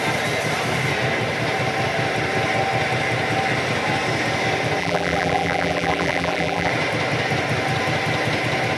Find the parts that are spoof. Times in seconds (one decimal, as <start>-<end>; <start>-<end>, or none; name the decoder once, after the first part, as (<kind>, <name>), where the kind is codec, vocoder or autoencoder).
4.8-6.7 (vocoder, BigVGAN v2)